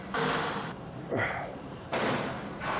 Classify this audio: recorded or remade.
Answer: remade